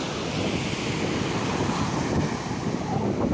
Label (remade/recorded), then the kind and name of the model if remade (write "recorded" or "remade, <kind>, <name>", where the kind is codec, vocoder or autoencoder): recorded